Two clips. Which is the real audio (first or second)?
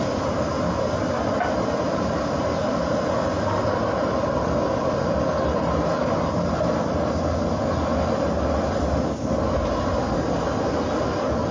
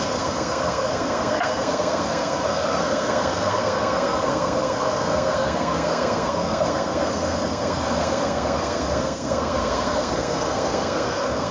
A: first